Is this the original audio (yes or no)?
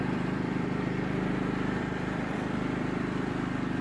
no